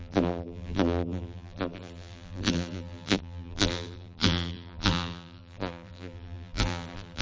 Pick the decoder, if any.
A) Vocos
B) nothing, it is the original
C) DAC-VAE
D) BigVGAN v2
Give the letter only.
D